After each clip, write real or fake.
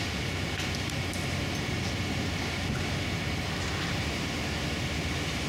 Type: real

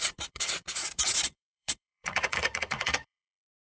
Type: fake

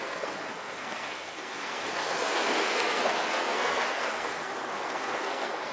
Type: fake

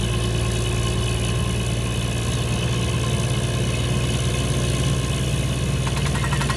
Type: real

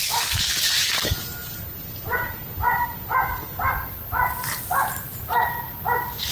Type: real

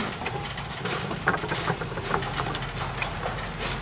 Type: real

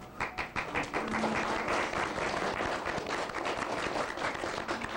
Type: real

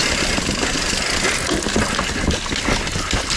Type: real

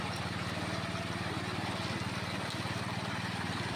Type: real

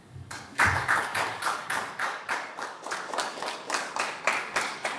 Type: fake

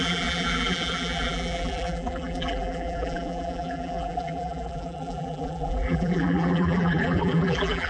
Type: fake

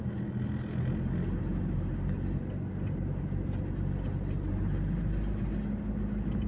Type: real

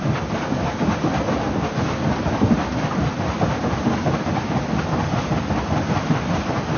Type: real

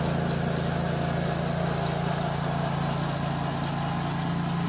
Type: real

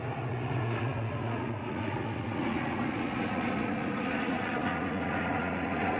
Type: fake